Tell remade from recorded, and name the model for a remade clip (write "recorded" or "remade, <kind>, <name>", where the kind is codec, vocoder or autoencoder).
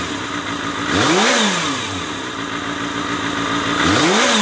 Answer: recorded